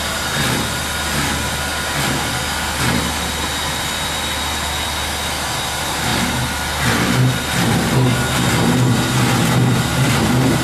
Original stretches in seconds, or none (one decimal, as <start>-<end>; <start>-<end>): 0.0-10.6